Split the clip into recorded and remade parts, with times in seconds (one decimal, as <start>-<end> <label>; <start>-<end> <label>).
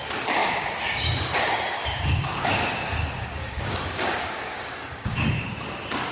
0.0-1.8 recorded; 1.8-5.5 remade; 5.5-6.1 recorded